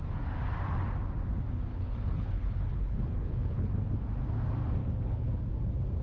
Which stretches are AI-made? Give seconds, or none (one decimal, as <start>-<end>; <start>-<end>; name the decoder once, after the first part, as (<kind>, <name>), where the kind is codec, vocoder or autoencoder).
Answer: 1.7-3.7 (codec, HILCodec); 4.8-5.5